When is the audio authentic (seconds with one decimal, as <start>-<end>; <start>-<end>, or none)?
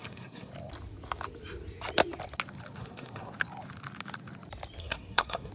0.5-2.8; 3.3-4.8